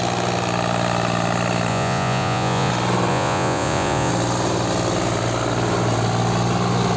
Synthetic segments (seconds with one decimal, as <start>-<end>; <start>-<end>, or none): 1.7-2.7; 3.1-4.1